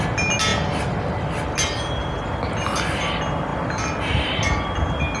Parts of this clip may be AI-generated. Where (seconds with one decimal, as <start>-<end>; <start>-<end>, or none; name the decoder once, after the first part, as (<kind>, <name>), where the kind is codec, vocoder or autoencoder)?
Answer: none